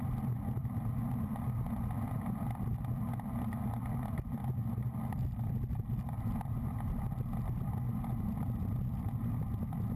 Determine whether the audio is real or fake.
real